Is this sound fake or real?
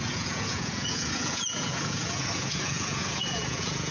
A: fake